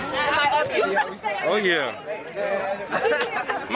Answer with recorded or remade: recorded